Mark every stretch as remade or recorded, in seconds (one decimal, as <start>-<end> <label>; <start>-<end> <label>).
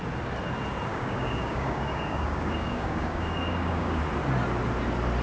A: 0.0-0.9 recorded; 0.9-4.0 remade; 4.0-5.2 recorded